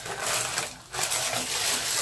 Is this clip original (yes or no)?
yes